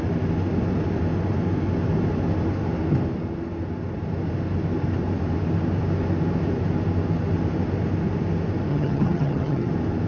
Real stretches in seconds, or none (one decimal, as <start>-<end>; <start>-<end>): 0.0-8.7; 9.7-10.1